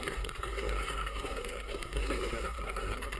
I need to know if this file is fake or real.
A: fake